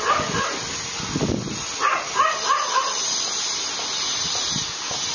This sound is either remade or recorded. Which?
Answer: recorded